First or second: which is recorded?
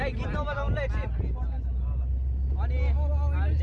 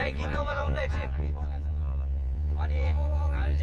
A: first